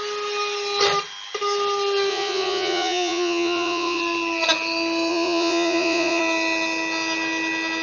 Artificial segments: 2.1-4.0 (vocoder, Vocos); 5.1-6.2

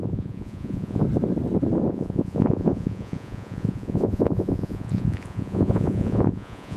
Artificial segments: 0.0-1.0 (vocoder, Vocos); 1.9-6.8

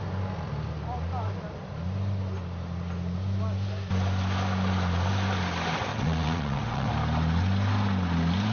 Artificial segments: 5.9-6.9 (vocoder, WaveNeXt)

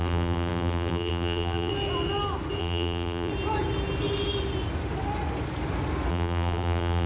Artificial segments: 0.0-1.7 (vocoder, BigVGAN v2); 2.6-3.3; 6.1-7.1

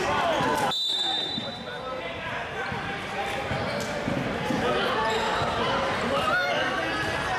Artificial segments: none

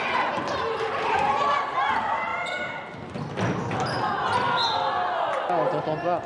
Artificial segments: none